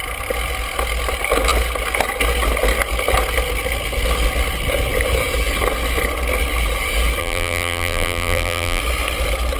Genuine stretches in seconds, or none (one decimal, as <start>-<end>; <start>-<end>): 0.0-7.2; 8.8-9.6